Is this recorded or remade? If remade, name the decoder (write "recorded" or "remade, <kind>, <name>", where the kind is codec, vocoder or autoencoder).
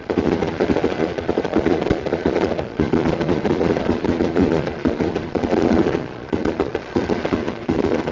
remade, vocoder, Vocos